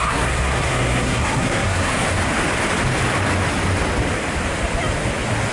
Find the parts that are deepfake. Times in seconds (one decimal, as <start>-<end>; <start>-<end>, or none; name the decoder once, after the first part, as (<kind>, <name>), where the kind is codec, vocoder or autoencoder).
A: 0.0-1.9 (codec, SNAC)